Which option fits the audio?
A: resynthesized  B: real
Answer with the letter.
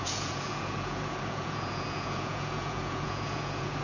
A